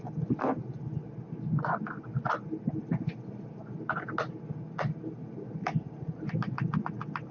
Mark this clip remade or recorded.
recorded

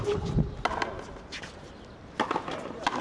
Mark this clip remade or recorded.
recorded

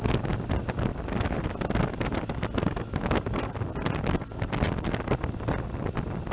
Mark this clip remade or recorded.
recorded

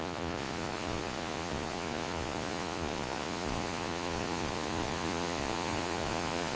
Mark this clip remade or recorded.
remade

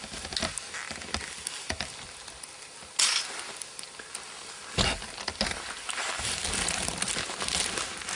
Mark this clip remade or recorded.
recorded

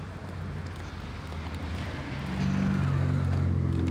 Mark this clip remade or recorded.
recorded